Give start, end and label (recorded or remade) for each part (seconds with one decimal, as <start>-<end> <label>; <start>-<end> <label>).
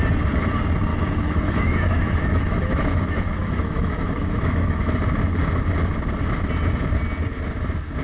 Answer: 0.0-0.9 recorded; 0.9-4.8 remade; 4.8-8.0 recorded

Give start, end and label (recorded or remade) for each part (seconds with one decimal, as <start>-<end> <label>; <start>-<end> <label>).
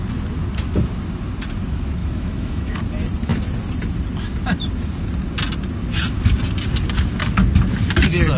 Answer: 0.0-2.0 recorded; 2.0-2.8 remade; 2.8-8.4 recorded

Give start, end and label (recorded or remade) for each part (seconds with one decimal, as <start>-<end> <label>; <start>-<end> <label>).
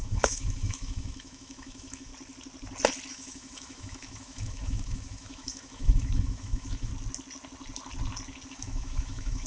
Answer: 0.0-2.1 remade; 2.1-3.1 recorded; 3.1-6.9 remade; 6.9-8.5 recorded; 8.5-9.5 remade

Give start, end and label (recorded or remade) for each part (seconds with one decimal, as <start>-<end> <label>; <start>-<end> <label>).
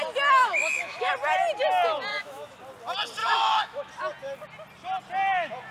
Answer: 0.0-0.4 recorded; 0.4-1.1 remade; 1.1-2.1 recorded; 2.1-2.6 remade; 2.6-3.2 recorded; 3.2-3.9 remade; 3.9-5.7 recorded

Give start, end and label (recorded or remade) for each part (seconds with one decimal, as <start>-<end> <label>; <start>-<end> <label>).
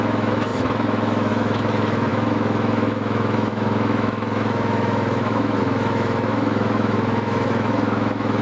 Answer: 0.0-8.4 remade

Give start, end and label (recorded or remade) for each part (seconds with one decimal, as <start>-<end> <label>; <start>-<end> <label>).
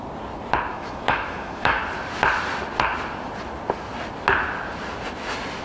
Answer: 0.0-0.7 recorded; 0.7-1.8 remade; 1.8-5.6 recorded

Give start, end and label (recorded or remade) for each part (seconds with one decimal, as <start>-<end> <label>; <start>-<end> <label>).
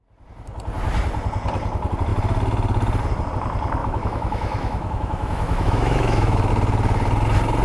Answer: 0.0-3.8 recorded; 3.8-6.5 remade; 6.5-7.6 recorded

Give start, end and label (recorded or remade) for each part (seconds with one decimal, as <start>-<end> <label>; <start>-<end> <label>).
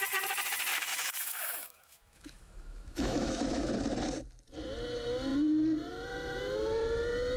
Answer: 0.0-0.9 recorded; 0.9-3.7 remade; 3.7-7.4 recorded